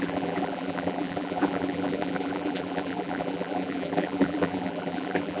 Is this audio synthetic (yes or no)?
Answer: yes